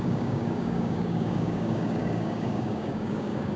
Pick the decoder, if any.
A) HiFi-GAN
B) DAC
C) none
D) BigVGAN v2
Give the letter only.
B